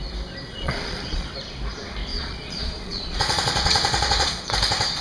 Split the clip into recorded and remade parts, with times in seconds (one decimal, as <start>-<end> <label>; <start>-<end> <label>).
0.0-0.5 recorded; 0.5-1.3 remade; 1.3-2.1 recorded; 2.1-4.5 remade; 4.5-5.0 recorded